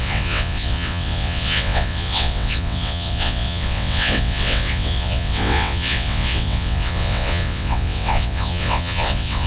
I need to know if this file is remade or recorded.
remade